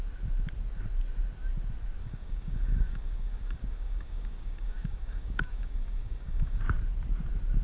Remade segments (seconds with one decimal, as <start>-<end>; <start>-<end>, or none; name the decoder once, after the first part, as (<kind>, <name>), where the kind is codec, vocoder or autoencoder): 2.0-6.6 (codec, DAC)